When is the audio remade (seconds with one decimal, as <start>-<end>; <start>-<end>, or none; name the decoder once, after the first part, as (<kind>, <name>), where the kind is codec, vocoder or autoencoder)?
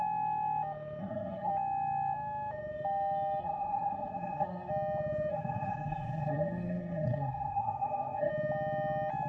1.0-1.5 (codec, SNAC); 3.4-4.7; 5.3-8.3